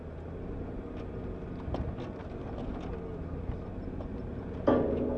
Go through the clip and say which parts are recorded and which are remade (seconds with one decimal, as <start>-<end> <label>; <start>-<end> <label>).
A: 0.0-5.2 recorded